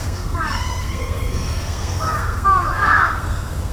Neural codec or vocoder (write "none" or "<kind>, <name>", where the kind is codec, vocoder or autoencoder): codec, SNAC